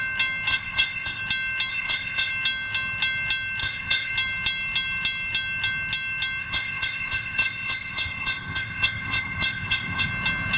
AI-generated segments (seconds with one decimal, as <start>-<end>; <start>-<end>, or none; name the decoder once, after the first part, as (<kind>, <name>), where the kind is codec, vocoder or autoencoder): 0.5-1.2 (codec, ZipCodec); 1.7-2.3; 3.6-4.1; 6.4-10.1